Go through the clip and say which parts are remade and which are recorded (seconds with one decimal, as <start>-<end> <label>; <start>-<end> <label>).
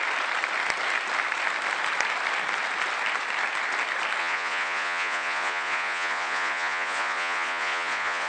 0.0-4.2 recorded; 4.2-8.3 remade